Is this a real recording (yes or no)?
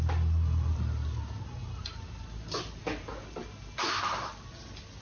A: yes